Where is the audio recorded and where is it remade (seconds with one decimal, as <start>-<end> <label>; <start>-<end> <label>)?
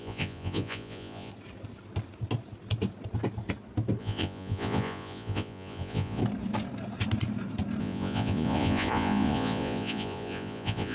0.0-1.3 remade; 1.3-4.0 recorded; 4.0-6.2 remade; 6.2-7.8 recorded; 7.8-10.9 remade